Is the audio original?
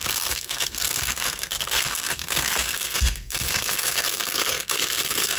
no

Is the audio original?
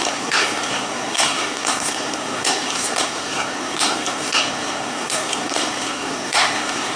no